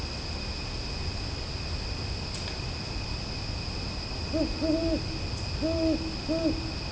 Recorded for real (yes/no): yes